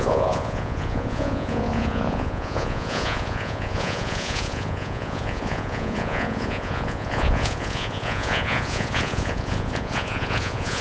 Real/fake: fake